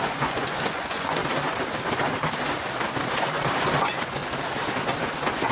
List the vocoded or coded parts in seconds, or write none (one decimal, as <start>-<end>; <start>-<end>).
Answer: 0.0-1.2; 3.8-4.2; 5.0-5.5